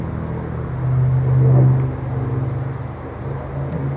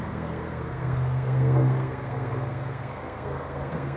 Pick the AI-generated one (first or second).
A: second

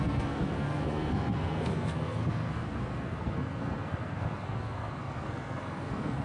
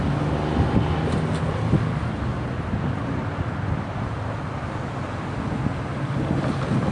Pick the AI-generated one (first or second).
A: first